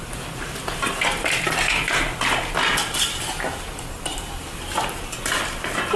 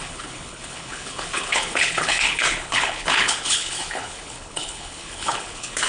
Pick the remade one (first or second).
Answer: second